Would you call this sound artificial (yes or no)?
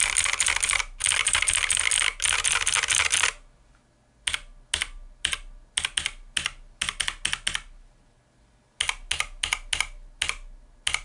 no